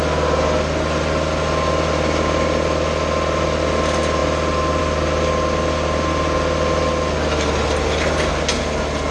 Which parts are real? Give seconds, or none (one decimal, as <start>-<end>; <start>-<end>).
0.0-9.1